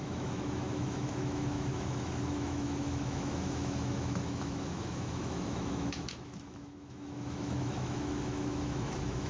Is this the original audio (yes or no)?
no